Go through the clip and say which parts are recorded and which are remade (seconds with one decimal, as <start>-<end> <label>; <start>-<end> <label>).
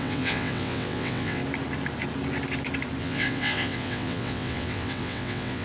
0.0-1.4 remade; 1.4-3.0 recorded; 3.0-5.6 remade